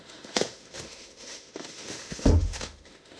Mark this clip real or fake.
fake